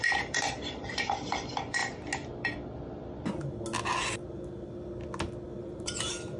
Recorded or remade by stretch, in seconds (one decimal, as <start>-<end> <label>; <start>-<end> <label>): 0.0-1.8 remade; 1.8-5.6 recorded; 5.6-6.4 remade